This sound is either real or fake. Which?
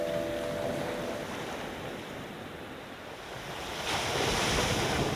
real